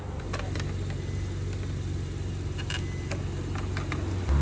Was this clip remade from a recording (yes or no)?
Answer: no